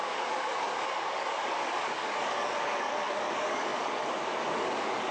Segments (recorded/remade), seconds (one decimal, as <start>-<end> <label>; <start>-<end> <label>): 0.0-5.1 remade